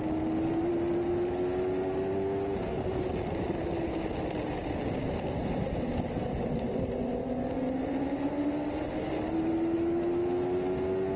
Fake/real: real